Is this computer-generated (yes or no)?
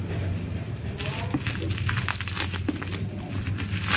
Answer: no